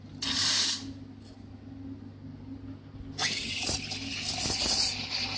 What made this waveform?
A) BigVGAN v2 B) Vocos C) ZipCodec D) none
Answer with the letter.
D